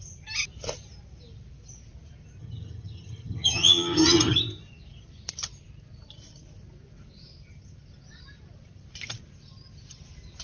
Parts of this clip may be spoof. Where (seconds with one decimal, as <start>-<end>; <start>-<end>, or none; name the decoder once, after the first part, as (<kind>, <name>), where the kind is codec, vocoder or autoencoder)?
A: 2.4-4.4 (vocoder, HiFi-GAN)